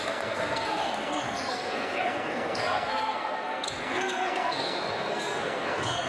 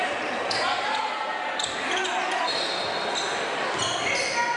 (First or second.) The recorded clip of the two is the second